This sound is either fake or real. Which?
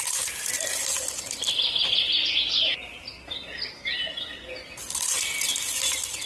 real